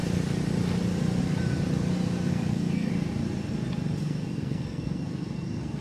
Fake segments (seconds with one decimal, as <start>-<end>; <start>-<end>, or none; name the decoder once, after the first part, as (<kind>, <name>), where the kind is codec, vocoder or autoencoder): 2.3-2.9 (codec, SNAC); 4.0-5.8